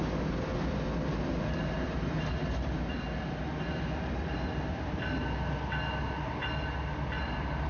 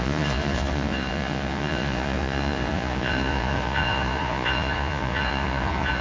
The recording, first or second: first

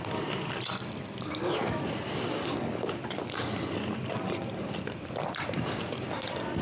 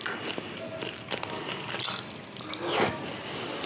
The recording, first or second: second